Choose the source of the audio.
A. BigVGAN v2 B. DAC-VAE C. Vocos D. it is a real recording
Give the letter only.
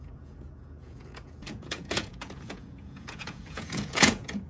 C